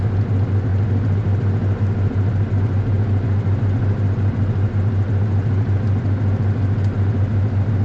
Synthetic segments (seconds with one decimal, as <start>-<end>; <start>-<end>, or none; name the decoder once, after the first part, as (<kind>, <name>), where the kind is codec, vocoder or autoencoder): none